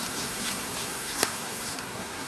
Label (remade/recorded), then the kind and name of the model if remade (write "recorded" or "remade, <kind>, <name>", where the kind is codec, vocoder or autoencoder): remade, codec, SNAC